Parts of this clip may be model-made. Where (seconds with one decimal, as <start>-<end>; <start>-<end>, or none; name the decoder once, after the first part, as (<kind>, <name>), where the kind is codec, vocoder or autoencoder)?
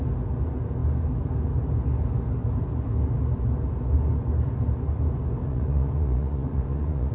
5.4-7.1 (vocoder, Vocos)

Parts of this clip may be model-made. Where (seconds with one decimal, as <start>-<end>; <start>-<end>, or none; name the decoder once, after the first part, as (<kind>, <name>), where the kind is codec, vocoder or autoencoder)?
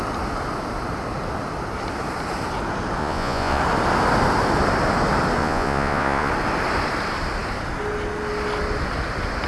3.0-3.6 (vocoder, Vocos); 5.4-6.3